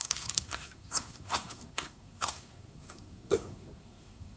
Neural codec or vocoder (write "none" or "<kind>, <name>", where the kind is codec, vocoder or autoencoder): codec, SNAC